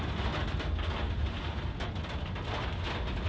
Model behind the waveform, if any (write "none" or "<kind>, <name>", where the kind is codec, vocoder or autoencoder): none